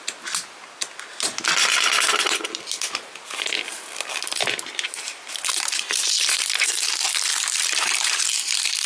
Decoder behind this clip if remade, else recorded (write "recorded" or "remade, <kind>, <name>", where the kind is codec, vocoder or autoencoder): recorded